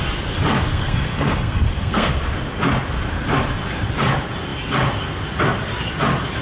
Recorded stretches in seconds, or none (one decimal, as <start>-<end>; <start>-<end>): 0.0-0.7; 2.2-6.4